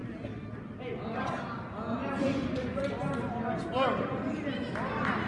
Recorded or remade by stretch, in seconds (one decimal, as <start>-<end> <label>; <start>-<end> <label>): 0.0-2.0 recorded; 2.0-2.9 remade; 2.9-5.3 recorded

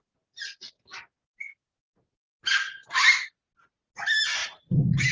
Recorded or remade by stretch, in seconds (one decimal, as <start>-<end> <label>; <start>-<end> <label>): 0.0-4.4 recorded; 4.4-5.1 remade

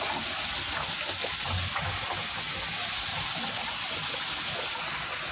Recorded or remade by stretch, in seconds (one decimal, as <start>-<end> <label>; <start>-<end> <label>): 0.0-5.3 recorded

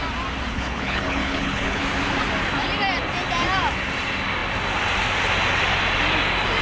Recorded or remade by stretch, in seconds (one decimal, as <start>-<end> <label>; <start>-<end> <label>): 0.0-0.5 recorded; 0.5-1.8 remade; 1.8-6.6 recorded